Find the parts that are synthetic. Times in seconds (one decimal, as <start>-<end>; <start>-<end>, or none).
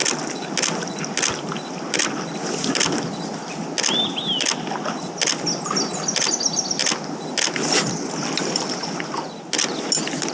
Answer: none